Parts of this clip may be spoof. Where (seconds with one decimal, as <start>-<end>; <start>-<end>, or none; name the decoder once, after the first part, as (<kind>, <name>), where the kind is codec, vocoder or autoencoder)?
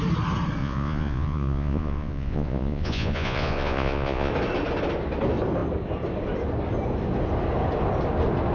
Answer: 0.6-4.3 (vocoder, Vocos)